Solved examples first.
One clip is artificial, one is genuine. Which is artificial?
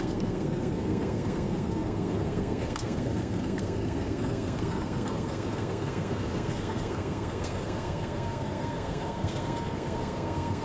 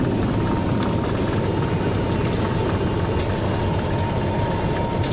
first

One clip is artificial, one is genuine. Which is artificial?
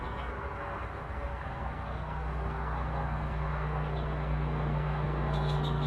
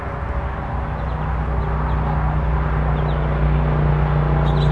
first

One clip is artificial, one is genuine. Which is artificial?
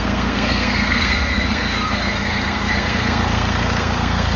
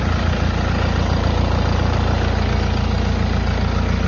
first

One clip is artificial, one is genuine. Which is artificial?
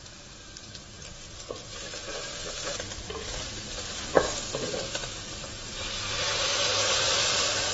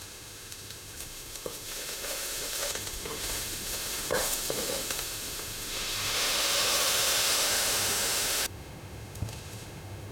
second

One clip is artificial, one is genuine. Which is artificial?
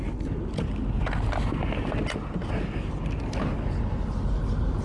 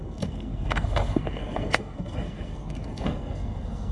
second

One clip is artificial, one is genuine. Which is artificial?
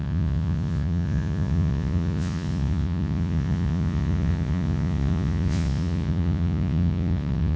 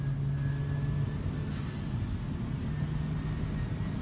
first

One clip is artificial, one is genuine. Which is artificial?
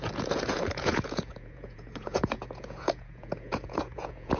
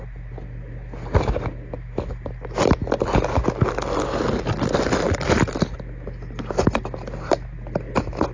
first